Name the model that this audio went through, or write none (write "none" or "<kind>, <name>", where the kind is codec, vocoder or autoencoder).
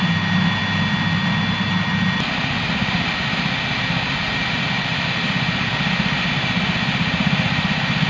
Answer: none